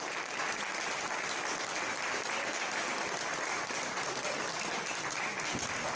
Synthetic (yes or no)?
no